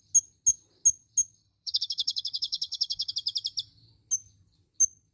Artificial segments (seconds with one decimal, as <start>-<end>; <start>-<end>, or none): 1.4-3.1